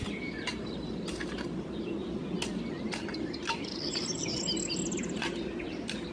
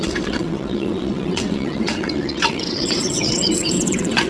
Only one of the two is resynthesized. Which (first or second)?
second